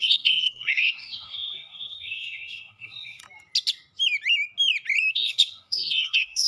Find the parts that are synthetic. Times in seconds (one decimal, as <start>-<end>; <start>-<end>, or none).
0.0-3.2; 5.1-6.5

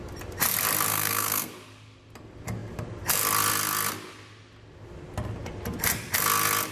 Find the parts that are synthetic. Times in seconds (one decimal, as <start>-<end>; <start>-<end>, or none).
0.9-1.5

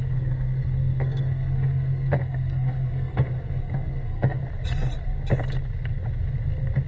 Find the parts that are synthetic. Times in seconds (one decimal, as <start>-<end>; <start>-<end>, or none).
0.0-4.4